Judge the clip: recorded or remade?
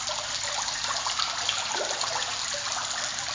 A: recorded